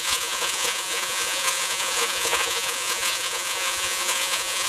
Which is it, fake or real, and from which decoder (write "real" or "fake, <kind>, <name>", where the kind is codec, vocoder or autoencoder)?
fake, vocoder, Vocos